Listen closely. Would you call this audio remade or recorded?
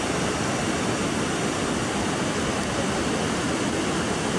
recorded